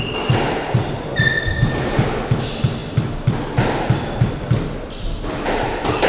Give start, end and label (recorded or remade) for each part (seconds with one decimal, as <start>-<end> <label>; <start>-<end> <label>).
0.0-6.1 recorded